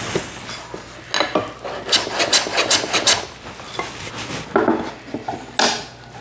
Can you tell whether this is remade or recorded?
recorded